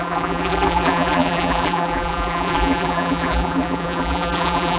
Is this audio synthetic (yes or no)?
yes